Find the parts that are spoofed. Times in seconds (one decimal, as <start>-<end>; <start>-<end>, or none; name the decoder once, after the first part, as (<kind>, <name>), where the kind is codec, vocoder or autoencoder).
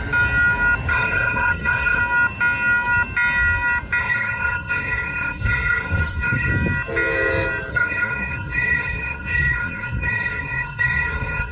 0.9-2.0 (codec, SNAC); 4.0-6.5; 7.7-11.5